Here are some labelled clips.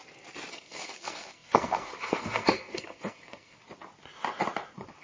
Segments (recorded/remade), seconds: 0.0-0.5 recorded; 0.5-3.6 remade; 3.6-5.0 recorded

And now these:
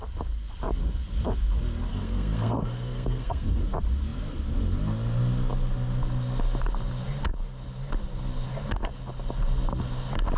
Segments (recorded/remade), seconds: 0.0-1.9 recorded; 1.9-3.6 remade; 3.6-10.4 recorded

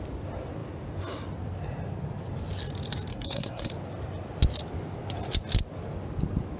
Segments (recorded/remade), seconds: 0.0-3.1 recorded; 3.1-3.7 remade; 3.7-6.6 recorded

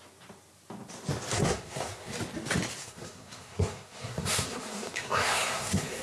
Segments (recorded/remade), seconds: 0.0-1.3 recorded; 1.3-2.1 remade; 2.1-2.8 recorded; 2.8-6.0 remade

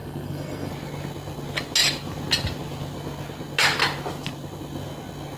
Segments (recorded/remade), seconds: 0.0-0.7 remade; 0.7-5.4 recorded

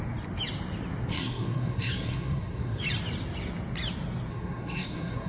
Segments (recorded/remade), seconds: 0.0-1.1 recorded; 1.1-2.8 remade; 2.8-4.3 recorded; 4.3-5.3 remade

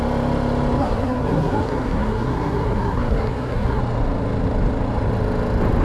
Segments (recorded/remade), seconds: 0.0-0.8 recorded; 0.8-3.8 remade; 3.8-5.8 recorded